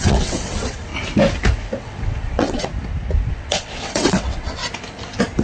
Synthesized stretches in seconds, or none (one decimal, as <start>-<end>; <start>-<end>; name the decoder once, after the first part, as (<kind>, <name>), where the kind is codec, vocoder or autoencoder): 0.0-0.9 (vocoder, WaveNeXt); 1.8-2.7; 3.3-4.6

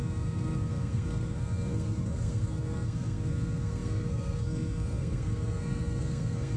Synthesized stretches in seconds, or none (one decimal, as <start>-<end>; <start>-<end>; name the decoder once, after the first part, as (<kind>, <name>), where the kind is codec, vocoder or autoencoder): 0.0-6.6 (codec, SNAC)